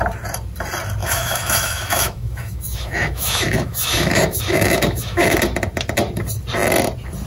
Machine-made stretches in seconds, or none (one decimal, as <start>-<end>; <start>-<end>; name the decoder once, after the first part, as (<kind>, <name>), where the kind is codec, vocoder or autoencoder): 1.0-5.4 (autoencoder, DAC-VAE)